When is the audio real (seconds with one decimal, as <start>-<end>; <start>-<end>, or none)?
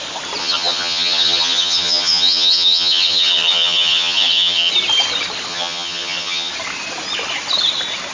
0.0-0.4; 4.7-5.5; 6.5-8.1